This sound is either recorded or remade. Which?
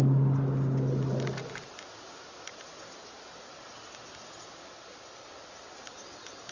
recorded